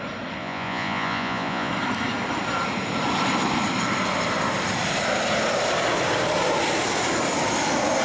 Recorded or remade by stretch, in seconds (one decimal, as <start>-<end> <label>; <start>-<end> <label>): 0.0-0.4 recorded; 0.4-1.7 remade; 1.7-8.0 recorded